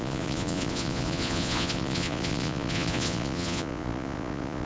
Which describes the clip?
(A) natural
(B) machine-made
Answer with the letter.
B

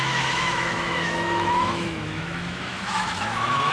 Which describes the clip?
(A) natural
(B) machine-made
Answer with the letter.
B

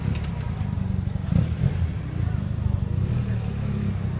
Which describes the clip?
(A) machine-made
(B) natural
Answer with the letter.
B